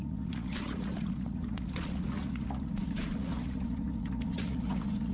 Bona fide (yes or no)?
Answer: no